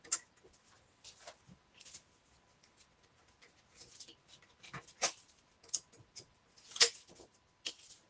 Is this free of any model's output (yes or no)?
yes